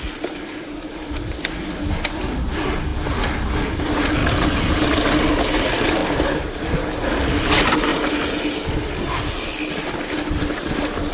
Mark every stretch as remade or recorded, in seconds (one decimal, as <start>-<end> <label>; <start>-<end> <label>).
0.0-2.9 remade; 2.9-3.7 recorded; 3.7-4.2 remade; 4.2-4.7 recorded; 4.7-6.0 remade; 6.0-7.0 recorded; 7.0-7.9 remade; 7.9-9.0 recorded; 9.0-11.1 remade